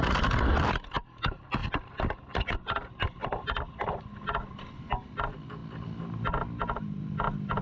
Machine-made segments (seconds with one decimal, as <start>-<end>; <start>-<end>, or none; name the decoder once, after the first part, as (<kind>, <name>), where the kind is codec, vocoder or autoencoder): none